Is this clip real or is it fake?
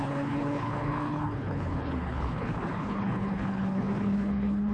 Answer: fake